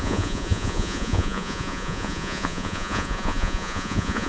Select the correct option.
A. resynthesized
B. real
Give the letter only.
A